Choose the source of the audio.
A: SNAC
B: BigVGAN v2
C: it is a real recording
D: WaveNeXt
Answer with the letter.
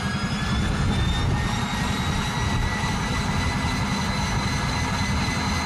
C